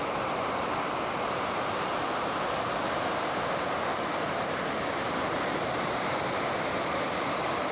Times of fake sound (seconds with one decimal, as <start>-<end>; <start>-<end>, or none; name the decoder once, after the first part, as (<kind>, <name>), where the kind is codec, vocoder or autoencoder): 0.0-3.9 (vocoder, BigVGAN v2); 5.1-7.7